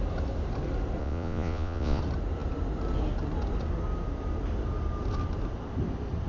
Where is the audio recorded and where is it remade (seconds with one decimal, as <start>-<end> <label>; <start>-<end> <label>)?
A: 0.0-1.0 recorded; 1.0-2.0 remade; 2.0-6.3 recorded